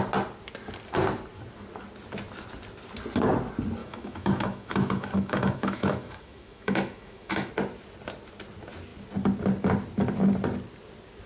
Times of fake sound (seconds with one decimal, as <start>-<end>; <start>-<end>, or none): 3.8-7.5